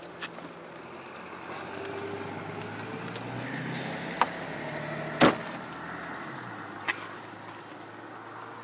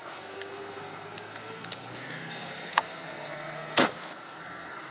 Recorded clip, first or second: first